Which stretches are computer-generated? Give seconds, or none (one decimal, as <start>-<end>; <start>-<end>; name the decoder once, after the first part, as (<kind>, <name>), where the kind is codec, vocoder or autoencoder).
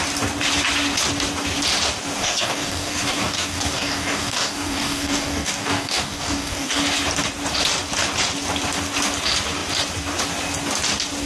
2.2-6.8 (codec, DAC)